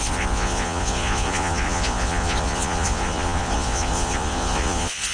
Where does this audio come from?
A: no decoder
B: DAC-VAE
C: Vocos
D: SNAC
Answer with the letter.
C